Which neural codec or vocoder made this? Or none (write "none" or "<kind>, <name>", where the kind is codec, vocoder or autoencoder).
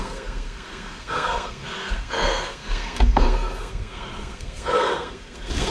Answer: codec, SNAC